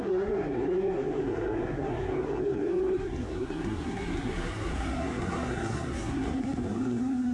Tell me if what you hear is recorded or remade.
remade